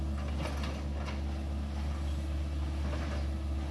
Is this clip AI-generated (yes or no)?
no